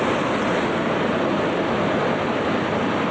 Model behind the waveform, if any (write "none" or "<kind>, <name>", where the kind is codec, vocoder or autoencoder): none